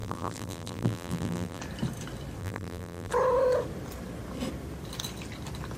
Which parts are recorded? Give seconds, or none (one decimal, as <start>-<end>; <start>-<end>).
1.6-2.4; 3.1-5.8